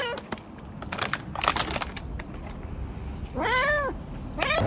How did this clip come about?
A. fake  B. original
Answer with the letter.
B